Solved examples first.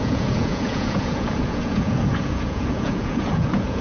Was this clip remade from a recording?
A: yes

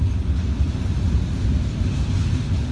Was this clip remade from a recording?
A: no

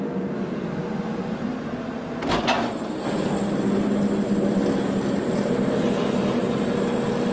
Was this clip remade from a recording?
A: no